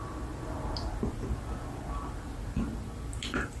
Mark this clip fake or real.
real